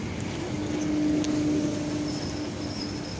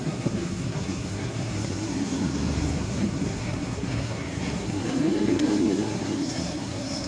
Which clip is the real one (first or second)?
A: first